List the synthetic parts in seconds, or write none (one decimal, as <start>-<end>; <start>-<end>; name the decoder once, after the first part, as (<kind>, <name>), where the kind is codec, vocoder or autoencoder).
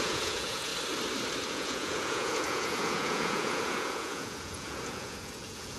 0.0-0.7 (vocoder, Vocos); 1.5-5.8